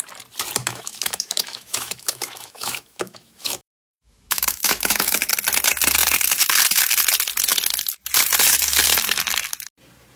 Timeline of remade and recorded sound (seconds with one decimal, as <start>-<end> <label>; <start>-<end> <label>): 0.0-0.6 recorded; 0.6-5.3 remade; 5.3-10.2 recorded